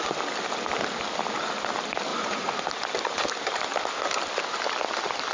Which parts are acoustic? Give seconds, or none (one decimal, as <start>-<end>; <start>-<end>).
0.0-2.1; 2.6-5.3